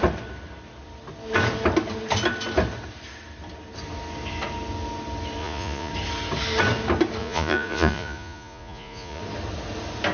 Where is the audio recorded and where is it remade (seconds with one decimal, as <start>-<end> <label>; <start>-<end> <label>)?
0.0-5.4 recorded; 5.4-5.9 remade; 5.9-7.2 recorded; 7.2-9.2 remade; 9.2-10.1 recorded